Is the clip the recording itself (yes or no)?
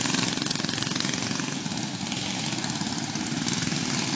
yes